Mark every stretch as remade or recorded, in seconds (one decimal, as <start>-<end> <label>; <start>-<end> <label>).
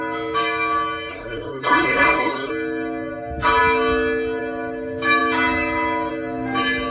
0.0-1.1 recorded; 1.1-2.5 remade; 2.5-6.9 recorded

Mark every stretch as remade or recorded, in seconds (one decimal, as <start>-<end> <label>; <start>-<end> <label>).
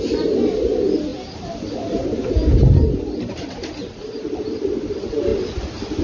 0.0-6.0 recorded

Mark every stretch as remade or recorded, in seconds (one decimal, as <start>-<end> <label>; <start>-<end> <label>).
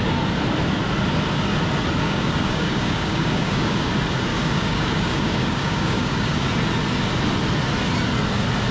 0.0-2.0 recorded; 2.0-3.9 remade; 3.9-4.3 recorded; 4.3-6.5 remade; 6.5-8.7 recorded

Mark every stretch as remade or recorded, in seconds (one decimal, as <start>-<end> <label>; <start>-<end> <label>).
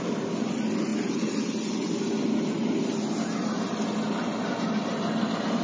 0.0-5.6 recorded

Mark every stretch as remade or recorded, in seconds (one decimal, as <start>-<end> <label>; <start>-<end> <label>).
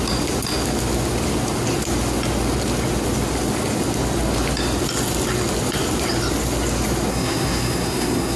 0.0-7.1 recorded; 7.1-8.4 remade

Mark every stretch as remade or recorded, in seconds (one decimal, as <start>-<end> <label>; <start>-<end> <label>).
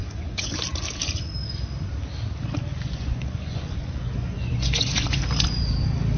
0.0-0.5 remade; 0.5-2.7 recorded; 2.7-5.2 remade; 5.2-6.2 recorded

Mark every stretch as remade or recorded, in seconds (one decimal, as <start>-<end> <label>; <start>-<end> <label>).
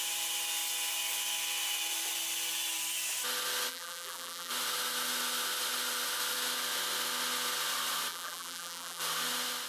0.0-3.7 recorded; 3.7-4.5 remade; 4.5-8.1 recorded; 8.1-9.0 remade; 9.0-9.7 recorded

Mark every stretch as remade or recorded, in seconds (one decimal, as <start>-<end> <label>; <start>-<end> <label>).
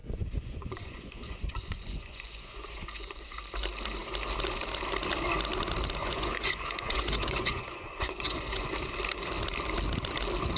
0.0-3.4 remade; 3.4-6.0 recorded; 6.0-8.7 remade; 8.7-10.6 recorded